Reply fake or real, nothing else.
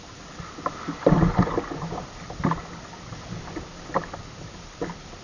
real